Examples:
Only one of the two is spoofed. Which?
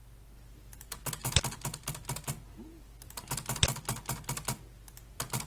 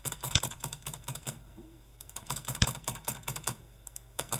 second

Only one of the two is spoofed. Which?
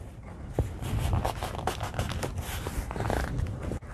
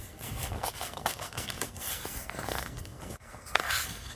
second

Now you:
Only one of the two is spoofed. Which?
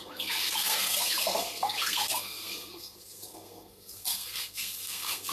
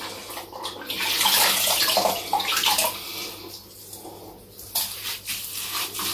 first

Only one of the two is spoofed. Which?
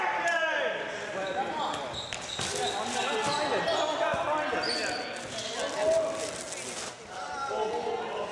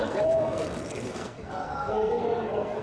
second